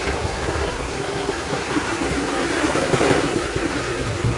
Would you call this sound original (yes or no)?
no